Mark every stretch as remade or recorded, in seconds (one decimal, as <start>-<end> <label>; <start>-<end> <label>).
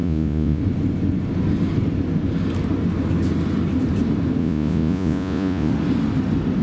0.0-0.6 remade; 0.6-4.4 recorded; 4.4-5.7 remade; 5.7-6.6 recorded